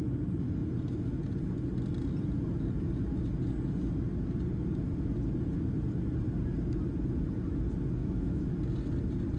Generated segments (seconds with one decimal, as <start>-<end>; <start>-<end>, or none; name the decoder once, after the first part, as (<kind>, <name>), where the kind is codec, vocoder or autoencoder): 8.0-8.5 (autoencoder, DAC-VAE)